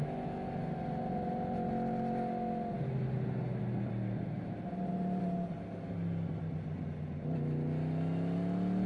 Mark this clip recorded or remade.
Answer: recorded